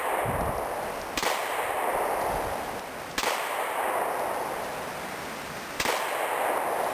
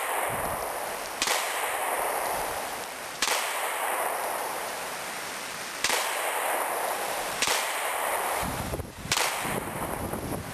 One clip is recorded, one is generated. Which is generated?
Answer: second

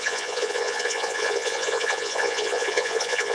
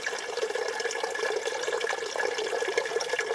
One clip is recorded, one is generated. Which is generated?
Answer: first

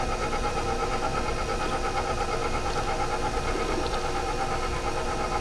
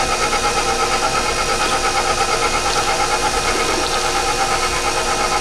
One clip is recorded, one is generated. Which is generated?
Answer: first